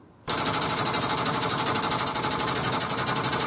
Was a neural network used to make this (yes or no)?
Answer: no